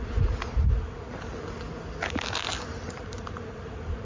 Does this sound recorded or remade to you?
recorded